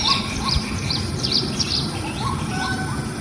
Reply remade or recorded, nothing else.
recorded